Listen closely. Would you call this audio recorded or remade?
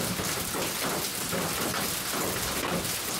recorded